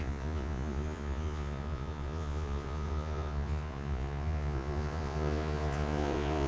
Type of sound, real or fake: fake